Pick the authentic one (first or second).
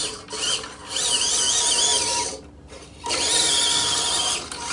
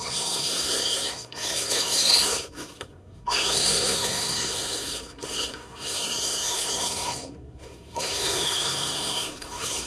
first